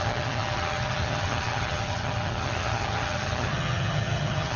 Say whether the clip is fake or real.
fake